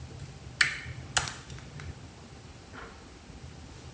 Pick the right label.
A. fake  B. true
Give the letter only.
B